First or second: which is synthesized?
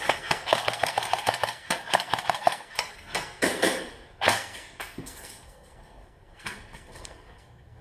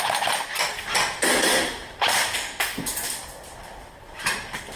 first